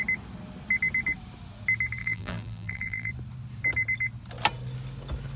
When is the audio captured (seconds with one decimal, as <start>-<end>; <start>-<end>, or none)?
0.0-2.0; 3.1-5.4